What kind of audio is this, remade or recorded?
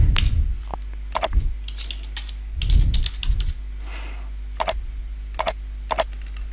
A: recorded